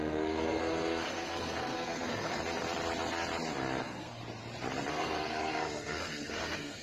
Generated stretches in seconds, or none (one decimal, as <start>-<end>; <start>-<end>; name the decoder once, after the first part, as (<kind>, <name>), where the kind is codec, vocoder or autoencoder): 0.0-2.4 (codec, SNAC); 3.8-4.2; 4.9-6.8